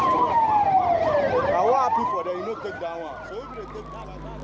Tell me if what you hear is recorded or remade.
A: recorded